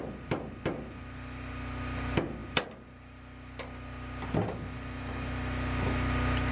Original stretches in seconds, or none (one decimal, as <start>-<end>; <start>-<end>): 0.0-6.5